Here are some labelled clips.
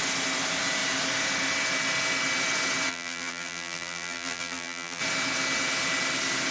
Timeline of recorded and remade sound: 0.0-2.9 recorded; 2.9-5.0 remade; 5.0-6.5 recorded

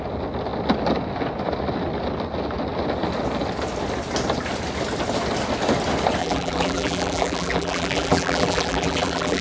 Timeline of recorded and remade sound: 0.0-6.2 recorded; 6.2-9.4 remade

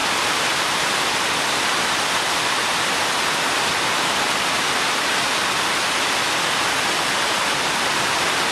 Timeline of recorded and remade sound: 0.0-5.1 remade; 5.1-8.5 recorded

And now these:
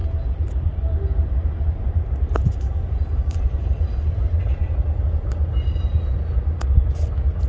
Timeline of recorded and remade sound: 0.0-1.6 recorded; 1.6-4.6 remade; 4.6-7.5 recorded